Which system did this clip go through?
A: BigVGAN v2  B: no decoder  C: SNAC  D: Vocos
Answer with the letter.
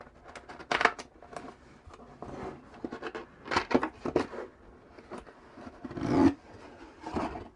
B